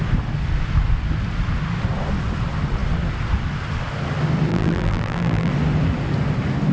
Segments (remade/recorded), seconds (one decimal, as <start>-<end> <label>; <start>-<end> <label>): 0.0-4.5 recorded; 4.5-5.5 remade; 5.5-6.7 recorded